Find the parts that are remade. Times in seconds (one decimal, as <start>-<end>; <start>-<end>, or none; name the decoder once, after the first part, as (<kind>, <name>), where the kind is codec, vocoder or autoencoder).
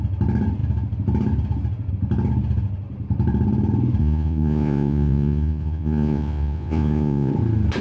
4.0-7.3 (vocoder, Vocos)